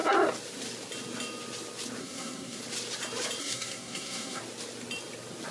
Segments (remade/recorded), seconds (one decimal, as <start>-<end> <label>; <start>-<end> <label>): 0.0-2.0 recorded; 2.0-2.6 remade; 2.6-3.4 recorded; 3.4-4.4 remade; 4.4-5.5 recorded